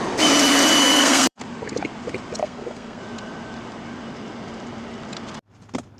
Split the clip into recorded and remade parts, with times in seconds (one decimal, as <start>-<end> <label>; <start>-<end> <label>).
0.0-0.8 recorded; 0.8-1.4 remade; 1.4-2.4 recorded; 2.4-3.0 remade; 3.0-6.0 recorded